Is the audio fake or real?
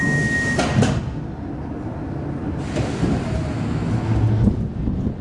real